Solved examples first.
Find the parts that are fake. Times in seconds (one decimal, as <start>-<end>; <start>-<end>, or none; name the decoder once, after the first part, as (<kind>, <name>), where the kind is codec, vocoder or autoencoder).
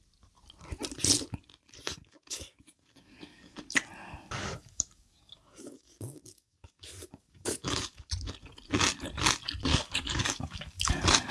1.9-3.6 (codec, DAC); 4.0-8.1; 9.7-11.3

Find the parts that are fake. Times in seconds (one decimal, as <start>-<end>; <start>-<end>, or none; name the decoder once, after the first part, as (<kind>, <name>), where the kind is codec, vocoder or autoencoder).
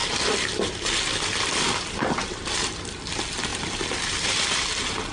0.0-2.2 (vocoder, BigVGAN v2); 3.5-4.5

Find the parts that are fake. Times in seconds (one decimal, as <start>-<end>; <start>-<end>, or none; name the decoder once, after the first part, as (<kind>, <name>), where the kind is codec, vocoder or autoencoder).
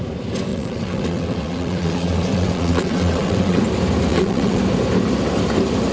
0.5-3.6 (vocoder, WaveNeXt); 4.1-4.6